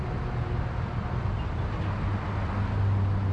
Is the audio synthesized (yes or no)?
no